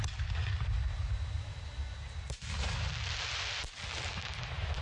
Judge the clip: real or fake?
real